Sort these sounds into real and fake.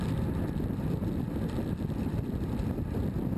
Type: real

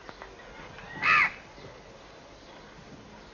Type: real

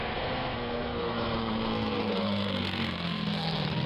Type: fake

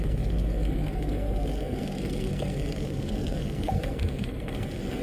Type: fake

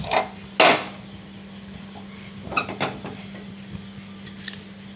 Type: real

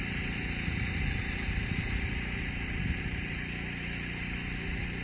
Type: real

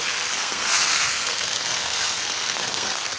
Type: fake